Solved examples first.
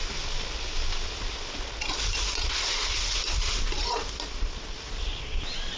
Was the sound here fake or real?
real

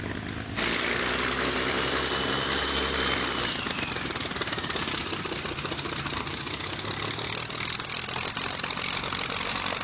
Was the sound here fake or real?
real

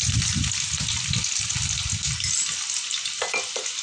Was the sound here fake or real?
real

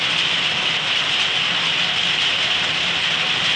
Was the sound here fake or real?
real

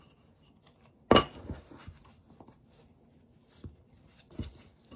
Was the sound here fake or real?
real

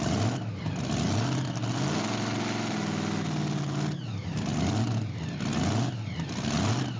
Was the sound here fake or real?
real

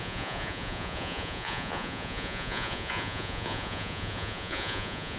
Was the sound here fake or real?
fake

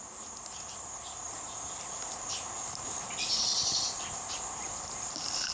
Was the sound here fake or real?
real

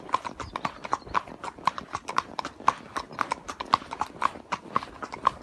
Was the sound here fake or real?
real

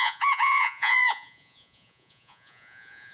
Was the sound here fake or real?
fake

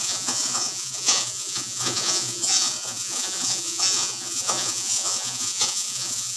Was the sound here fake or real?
fake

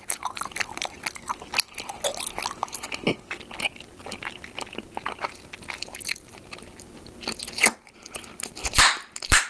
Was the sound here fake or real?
real